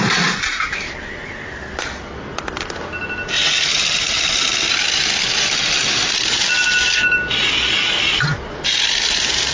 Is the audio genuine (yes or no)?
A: yes